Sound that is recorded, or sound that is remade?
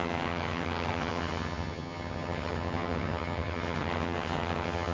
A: remade